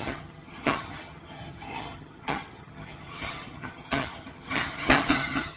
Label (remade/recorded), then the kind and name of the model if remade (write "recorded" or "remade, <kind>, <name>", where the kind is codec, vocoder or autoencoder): remade, vocoder, HiFi-GAN